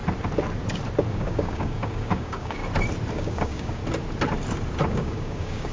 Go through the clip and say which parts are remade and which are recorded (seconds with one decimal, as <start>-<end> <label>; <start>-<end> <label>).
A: 0.0-1.1 recorded; 1.1-2.6 remade; 2.6-3.1 recorded; 3.1-3.8 remade; 3.8-4.9 recorded; 4.9-5.7 remade